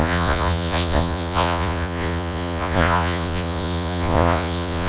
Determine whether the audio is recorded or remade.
remade